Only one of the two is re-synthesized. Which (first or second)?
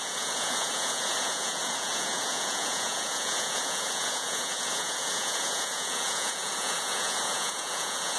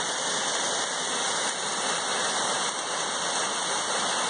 first